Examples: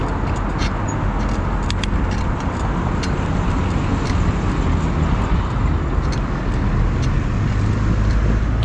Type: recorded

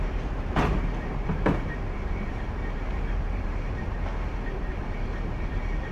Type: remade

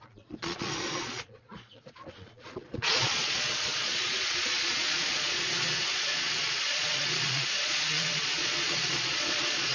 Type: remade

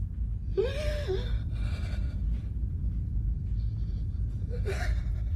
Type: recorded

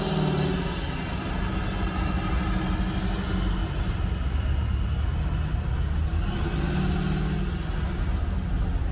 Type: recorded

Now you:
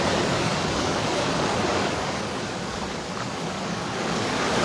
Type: remade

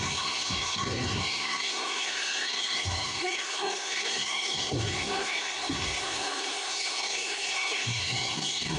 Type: remade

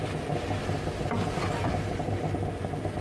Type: recorded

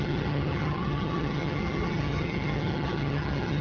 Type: remade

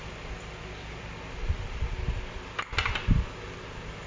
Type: recorded